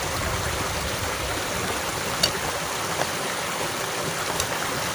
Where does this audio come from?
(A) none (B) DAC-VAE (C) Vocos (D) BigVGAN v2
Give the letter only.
A